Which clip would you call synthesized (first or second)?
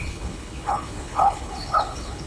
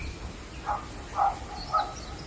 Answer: first